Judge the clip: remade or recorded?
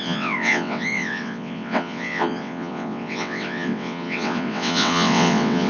remade